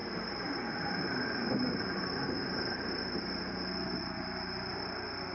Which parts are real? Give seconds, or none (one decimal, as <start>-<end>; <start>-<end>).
3.2-5.3